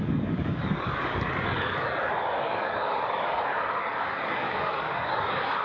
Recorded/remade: remade